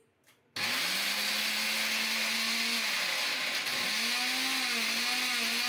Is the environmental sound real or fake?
real